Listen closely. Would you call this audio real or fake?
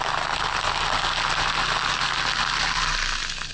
real